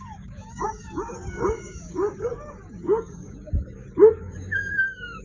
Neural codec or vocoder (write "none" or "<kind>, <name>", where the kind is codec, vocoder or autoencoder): codec, DAC